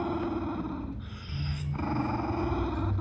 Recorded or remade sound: recorded